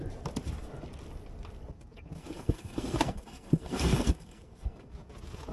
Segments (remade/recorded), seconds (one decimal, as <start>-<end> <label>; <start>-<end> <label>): 0.0-2.2 recorded; 2.2-4.9 remade; 4.9-5.5 recorded